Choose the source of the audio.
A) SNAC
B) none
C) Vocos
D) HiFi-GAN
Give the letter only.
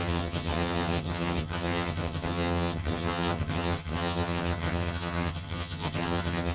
D